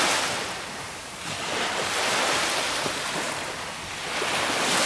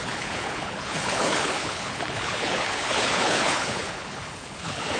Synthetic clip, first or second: second